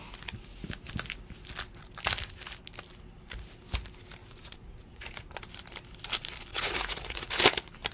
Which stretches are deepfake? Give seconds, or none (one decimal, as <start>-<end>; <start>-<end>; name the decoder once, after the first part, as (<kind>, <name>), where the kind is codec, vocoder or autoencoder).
4.2-5.3 (vocoder, Vocos); 6.5-7.4